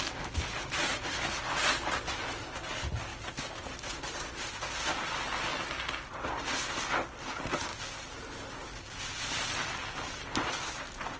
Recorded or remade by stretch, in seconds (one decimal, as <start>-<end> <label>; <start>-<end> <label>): 0.0-0.8 recorded; 0.8-1.4 remade; 1.4-11.2 recorded